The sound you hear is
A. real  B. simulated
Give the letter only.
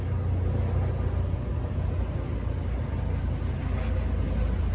A